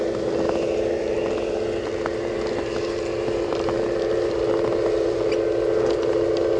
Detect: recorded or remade recorded